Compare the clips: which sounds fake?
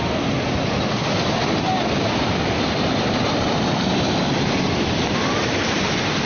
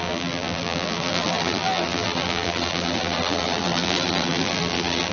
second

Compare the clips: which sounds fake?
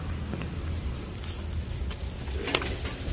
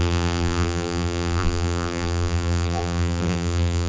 second